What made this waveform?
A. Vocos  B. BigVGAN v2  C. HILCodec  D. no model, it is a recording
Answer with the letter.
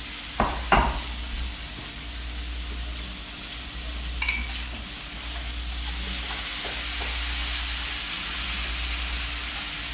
D